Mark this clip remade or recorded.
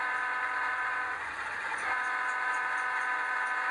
remade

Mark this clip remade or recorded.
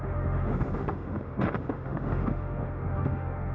remade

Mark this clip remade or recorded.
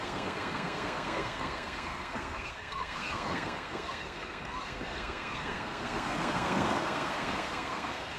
remade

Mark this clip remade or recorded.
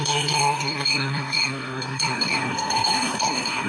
remade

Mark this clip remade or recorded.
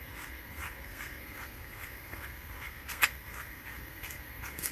remade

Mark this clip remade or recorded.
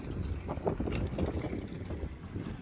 recorded